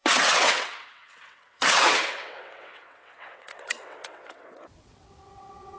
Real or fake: fake